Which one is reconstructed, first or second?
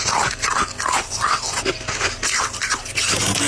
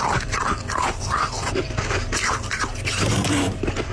second